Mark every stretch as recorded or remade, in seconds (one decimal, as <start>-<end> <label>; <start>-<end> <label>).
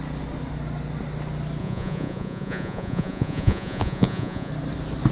0.0-1.6 recorded; 1.6-4.5 remade; 4.5-5.1 recorded